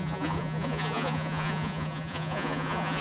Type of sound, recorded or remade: remade